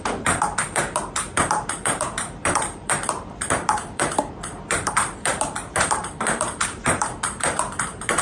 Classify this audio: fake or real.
fake